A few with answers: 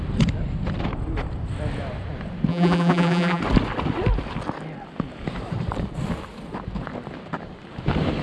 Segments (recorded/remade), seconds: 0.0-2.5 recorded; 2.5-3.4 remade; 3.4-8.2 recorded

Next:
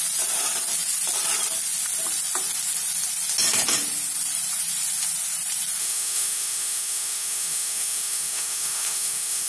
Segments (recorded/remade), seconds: 0.0-5.8 recorded; 5.8-9.5 remade